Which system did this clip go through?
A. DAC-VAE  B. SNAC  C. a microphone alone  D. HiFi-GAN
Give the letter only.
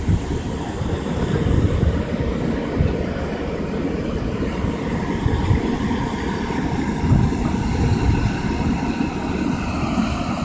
C